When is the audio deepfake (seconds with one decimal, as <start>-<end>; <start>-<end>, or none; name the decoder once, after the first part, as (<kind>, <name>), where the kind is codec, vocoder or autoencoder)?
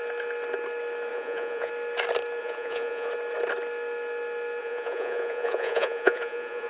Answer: 1.1-1.7 (vocoder, Vocos); 2.4-3.1; 4.6-6.7